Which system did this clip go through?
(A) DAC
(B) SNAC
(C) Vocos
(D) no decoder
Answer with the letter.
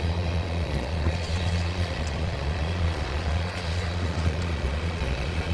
C